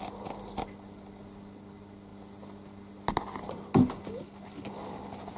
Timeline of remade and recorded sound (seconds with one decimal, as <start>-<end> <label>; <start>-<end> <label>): 0.0-5.4 recorded